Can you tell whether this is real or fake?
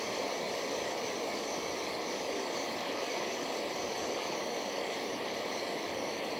fake